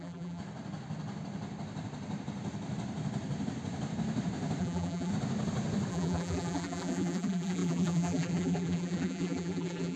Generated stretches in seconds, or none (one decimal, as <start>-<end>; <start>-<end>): 0.0-0.4; 4.6-5.1; 5.9-10.0

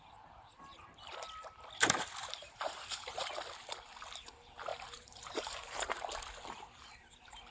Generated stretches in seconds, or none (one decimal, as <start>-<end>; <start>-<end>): 2.2-3.3; 4.7-5.9